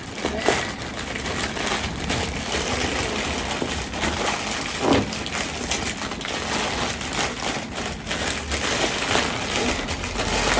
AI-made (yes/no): no